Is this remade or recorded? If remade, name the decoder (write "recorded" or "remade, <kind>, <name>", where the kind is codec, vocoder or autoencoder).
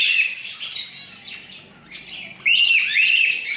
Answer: recorded